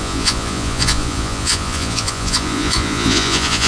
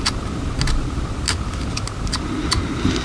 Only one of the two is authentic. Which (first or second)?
second